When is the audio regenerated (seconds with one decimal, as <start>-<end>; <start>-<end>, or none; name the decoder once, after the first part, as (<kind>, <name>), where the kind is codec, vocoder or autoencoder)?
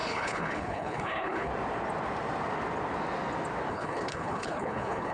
0.0-1.5 (codec, HILCodec); 3.7-5.1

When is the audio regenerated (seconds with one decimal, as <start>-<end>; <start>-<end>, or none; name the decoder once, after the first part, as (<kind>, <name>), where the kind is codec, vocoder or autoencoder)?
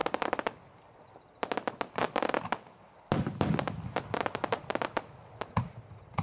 none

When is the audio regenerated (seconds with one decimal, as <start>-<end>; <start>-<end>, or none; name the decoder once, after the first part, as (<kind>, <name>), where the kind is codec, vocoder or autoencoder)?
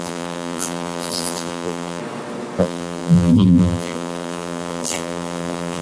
0.0-2.0 (vocoder, BigVGAN v2); 2.6-5.8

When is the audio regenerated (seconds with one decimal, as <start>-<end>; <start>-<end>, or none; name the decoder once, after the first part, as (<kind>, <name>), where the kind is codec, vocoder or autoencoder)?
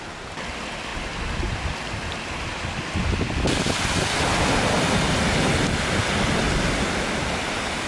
none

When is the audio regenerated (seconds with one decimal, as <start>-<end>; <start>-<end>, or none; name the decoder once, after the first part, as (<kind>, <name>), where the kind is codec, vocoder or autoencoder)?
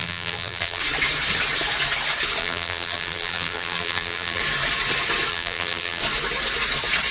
0.0-0.8 (vocoder, BigVGAN v2); 2.4-4.4; 5.3-6.0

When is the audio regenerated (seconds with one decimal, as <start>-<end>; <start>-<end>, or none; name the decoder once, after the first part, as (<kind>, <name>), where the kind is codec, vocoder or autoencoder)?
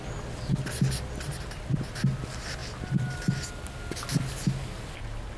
none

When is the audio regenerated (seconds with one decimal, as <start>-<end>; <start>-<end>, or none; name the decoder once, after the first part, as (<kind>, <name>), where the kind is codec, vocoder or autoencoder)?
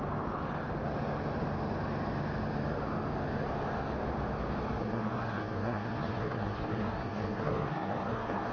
4.8-8.5 (codec, SNAC)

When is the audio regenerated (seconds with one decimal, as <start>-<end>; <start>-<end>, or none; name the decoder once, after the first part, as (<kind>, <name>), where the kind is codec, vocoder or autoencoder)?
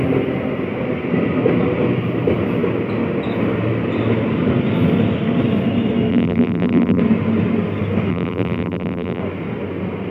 6.1-7.0 (vocoder, BigVGAN v2); 8.1-9.2